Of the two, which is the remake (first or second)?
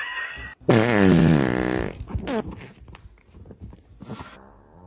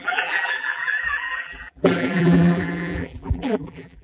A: second